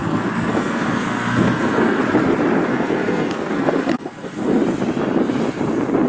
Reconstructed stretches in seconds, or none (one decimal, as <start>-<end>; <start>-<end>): 0.0-2.0; 2.7-4.6